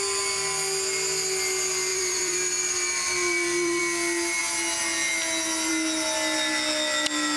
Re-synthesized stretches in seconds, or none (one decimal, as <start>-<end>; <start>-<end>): 1.9-3.8